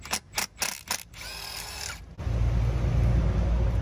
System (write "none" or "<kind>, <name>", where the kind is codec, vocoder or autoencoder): none